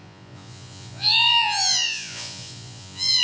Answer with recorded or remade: remade